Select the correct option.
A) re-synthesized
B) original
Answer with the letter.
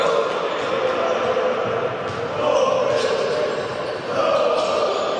B